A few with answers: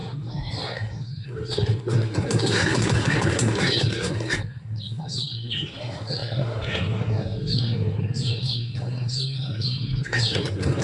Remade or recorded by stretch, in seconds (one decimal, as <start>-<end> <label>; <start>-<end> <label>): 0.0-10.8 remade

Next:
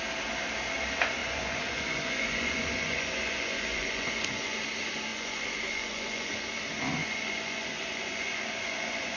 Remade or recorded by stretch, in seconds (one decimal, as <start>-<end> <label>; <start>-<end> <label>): 0.0-1.2 recorded; 1.2-4.6 remade; 4.6-5.1 recorded; 5.1-6.6 remade; 6.6-7.0 recorded; 7.0-9.2 remade

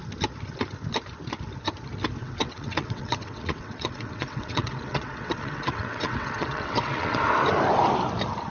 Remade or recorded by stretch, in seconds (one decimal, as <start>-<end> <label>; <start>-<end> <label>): 0.0-2.2 recorded; 2.2-7.2 remade; 7.2-8.5 recorded

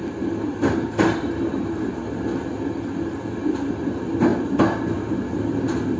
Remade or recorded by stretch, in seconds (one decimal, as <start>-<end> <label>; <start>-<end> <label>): 0.0-6.0 recorded